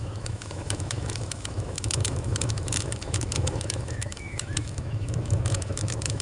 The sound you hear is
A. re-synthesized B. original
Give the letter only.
A